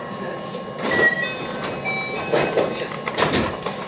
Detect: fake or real real